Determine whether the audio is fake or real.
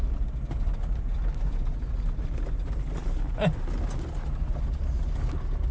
real